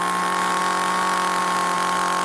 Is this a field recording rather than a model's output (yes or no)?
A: yes